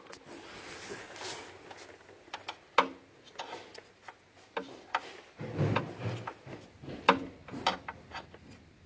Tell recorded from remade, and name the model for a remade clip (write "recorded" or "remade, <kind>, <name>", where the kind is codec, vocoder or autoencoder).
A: recorded